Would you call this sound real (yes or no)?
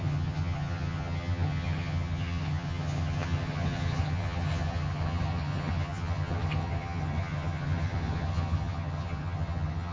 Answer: no